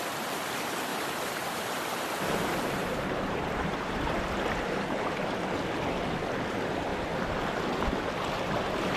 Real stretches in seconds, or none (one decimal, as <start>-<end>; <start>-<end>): 0.0-0.9; 4.2-9.0